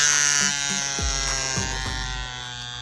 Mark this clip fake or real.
real